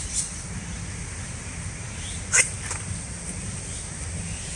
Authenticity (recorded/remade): recorded